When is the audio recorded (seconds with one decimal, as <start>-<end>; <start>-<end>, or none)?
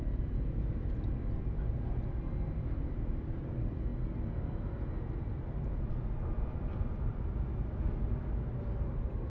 0.0-9.3